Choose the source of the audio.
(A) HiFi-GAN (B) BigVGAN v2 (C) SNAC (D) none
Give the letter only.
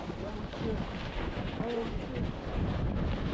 D